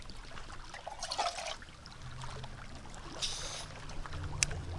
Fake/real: real